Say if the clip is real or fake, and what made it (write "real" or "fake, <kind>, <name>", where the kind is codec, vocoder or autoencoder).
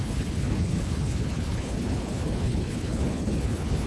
fake, codec, HILCodec